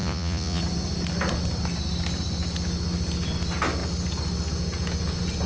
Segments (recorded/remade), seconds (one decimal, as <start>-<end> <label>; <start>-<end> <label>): 0.0-0.6 remade; 0.6-5.5 recorded